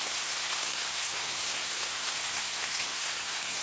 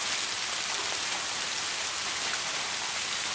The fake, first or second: first